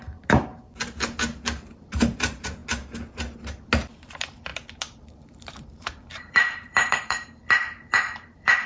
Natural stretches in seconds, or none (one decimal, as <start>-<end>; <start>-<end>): 0.5-1.7; 2.6-4.1